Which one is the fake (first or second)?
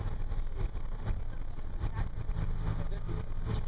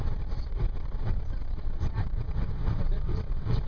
second